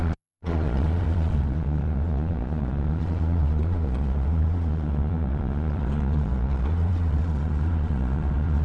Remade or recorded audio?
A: remade